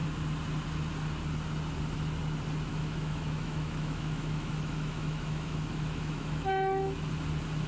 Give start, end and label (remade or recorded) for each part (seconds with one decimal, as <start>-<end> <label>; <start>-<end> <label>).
0.0-2.7 recorded; 2.7-7.1 remade; 7.1-7.7 recorded